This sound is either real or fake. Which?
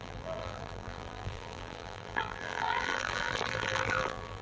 fake